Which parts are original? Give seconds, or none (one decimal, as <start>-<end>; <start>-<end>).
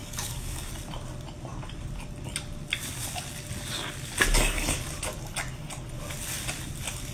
0.7-7.1